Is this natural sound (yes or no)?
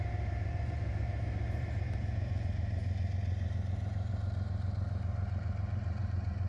no